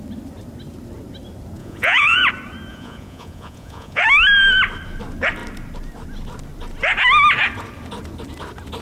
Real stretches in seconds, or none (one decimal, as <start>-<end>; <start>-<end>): 0.0-1.6; 2.3-2.7; 4.0-8.8